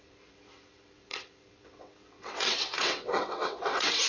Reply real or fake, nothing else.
fake